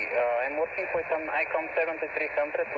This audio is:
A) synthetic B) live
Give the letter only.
B